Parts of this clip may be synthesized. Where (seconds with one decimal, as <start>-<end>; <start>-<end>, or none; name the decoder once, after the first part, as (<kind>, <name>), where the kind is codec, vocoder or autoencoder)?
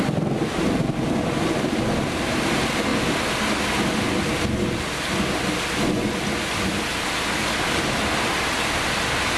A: none